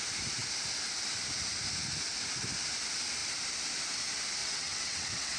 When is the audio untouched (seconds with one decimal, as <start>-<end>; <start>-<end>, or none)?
0.0-4.4